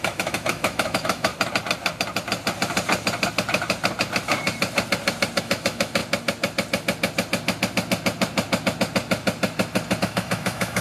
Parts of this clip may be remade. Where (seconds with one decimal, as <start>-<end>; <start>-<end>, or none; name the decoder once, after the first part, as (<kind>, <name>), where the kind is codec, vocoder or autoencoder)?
0.0-1.3 (autoencoder, DAC-VAE); 5.4-6.0; 10.0-10.8